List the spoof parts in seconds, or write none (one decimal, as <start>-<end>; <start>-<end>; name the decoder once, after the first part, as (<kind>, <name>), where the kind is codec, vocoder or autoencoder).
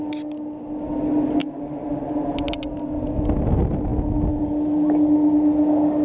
none